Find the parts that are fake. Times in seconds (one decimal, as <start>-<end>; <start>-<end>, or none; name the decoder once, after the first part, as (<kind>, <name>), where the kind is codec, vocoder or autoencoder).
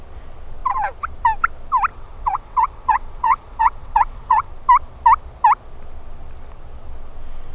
1.9-4.5 (vocoder, WaveNeXt)